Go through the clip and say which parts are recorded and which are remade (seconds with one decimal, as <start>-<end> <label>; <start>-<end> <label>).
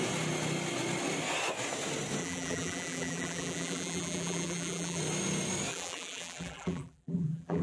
0.0-2.2 recorded; 2.2-5.0 remade; 5.0-5.7 recorded; 5.7-7.6 remade